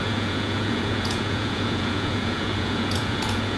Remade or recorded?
remade